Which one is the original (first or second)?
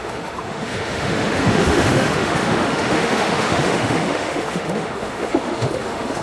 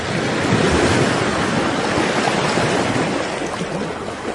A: second